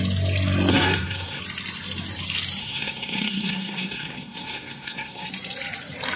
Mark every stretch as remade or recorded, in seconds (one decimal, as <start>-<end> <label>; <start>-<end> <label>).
0.0-0.7 recorded; 0.7-1.4 remade; 1.4-2.6 recorded; 2.6-5.3 remade; 5.3-6.2 recorded